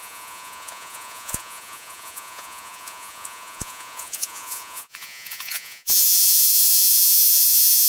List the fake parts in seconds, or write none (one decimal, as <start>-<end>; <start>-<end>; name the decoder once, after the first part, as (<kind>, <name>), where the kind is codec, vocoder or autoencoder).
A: 0.0-7.9 (vocoder, Vocos)